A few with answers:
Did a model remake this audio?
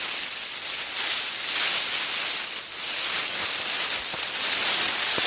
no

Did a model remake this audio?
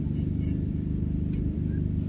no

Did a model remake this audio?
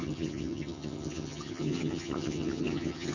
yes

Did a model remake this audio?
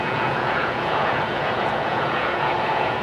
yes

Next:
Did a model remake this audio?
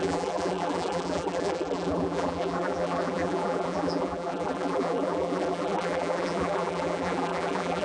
yes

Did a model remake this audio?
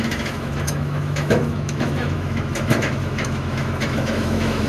yes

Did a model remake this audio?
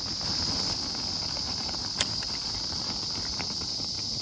no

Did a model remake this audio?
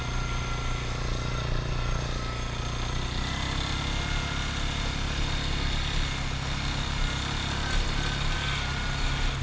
no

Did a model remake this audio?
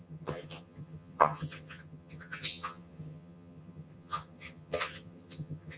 yes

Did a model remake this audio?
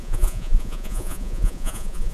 yes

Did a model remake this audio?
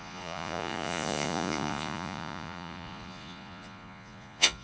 yes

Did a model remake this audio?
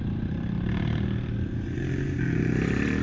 no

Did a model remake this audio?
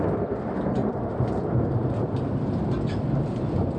yes